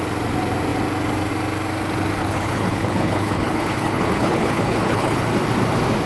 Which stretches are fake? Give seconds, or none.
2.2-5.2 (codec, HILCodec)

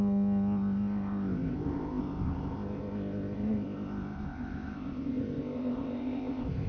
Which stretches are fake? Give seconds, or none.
0.0-6.7 (codec, ZipCodec)

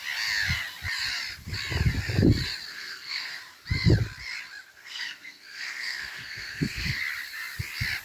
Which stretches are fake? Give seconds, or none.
2.7-3.4 (codec, SNAC); 4.7-7.0

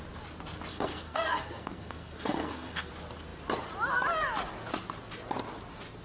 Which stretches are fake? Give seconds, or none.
0.7-2.9 (codec, SNAC)

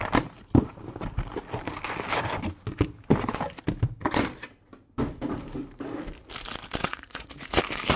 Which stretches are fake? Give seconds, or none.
6.8-7.6 (vocoder, Vocos)